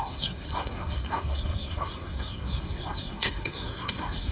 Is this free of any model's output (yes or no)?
no